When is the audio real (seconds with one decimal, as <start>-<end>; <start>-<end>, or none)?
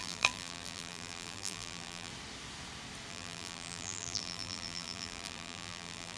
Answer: 2.1-3.1